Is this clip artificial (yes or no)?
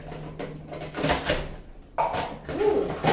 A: no